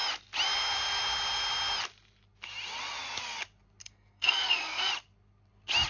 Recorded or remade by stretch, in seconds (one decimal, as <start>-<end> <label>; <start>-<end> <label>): 0.0-3.8 recorded; 3.8-4.9 remade; 4.9-5.9 recorded